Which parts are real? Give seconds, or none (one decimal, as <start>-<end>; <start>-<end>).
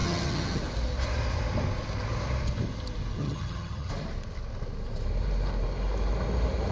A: 0.6-3.2; 3.9-6.7